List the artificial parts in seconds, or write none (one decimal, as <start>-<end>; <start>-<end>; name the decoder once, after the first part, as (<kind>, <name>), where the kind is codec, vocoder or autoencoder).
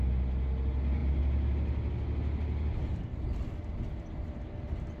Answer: none